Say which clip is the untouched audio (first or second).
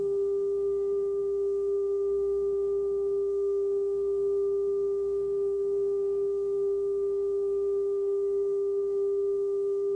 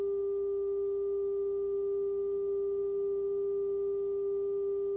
second